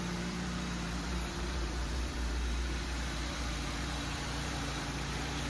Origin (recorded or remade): remade